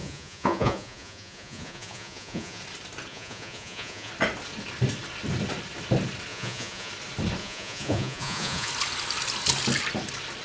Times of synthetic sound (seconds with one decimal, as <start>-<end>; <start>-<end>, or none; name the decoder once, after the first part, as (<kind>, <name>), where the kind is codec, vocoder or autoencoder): 0.0-2.6 (vocoder, Vocos); 3.1-4.1; 6.3-6.9; 7.4-8.7